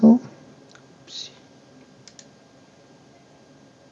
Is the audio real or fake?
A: real